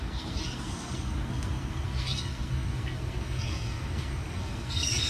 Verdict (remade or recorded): remade